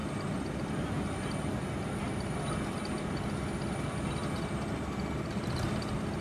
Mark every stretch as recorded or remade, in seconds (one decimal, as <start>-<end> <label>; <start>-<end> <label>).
0.0-6.2 recorded

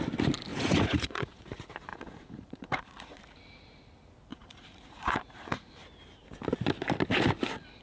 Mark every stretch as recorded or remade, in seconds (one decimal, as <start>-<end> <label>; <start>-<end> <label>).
0.0-0.5 recorded; 0.5-1.5 remade; 1.5-1.9 recorded; 1.9-3.2 remade; 3.2-4.3 recorded; 4.3-5.7 remade; 5.7-7.8 recorded